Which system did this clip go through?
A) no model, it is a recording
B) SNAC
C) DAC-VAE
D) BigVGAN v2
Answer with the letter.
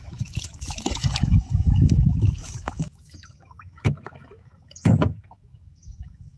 C